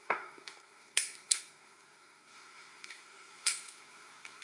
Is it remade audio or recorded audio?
remade